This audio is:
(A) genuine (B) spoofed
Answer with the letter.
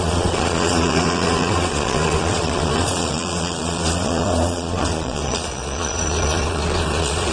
B